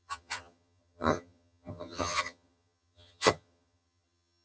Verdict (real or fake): fake